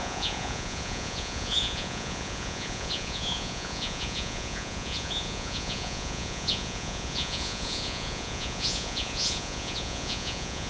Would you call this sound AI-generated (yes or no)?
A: yes